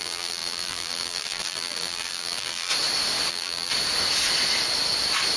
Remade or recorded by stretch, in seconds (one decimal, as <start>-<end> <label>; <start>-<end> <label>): 0.0-2.7 remade; 2.7-3.3 recorded; 3.3-3.7 remade; 3.7-5.4 recorded